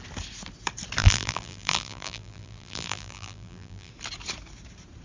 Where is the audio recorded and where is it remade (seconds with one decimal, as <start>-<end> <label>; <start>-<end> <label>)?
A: 0.0-1.0 recorded; 1.0-3.9 remade; 3.9-5.0 recorded

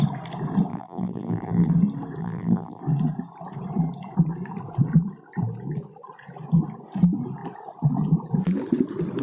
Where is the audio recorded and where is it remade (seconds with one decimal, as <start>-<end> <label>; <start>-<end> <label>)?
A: 0.0-0.7 recorded; 0.7-1.7 remade; 1.7-2.2 recorded; 2.2-2.8 remade; 2.8-9.2 recorded

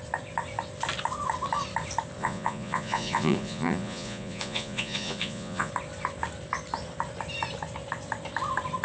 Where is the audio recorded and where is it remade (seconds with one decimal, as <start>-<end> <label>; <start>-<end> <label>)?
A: 0.0-2.2 recorded; 2.2-5.7 remade; 5.7-8.8 recorded

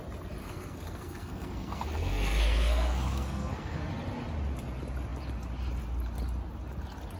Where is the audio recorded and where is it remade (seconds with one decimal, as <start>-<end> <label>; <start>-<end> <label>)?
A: 0.0-0.4 recorded; 0.4-3.9 remade; 3.9-7.2 recorded

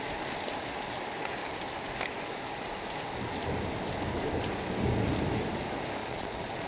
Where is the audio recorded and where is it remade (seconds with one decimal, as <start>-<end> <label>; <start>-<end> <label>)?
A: 0.0-6.0 recorded; 6.0-6.7 remade

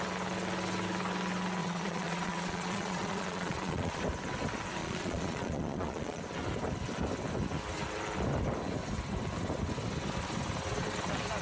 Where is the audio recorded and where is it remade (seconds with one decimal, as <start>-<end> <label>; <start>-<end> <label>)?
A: 0.0-1.6 recorded; 1.6-4.0 remade; 4.0-4.8 recorded; 4.8-6.2 remade; 6.2-11.4 recorded